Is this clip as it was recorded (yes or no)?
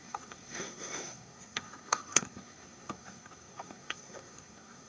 no